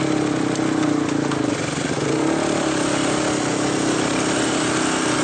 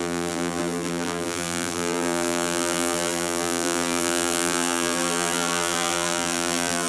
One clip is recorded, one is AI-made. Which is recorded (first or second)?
first